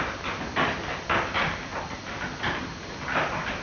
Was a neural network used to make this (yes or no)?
no